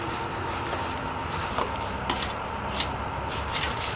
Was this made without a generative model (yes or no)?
no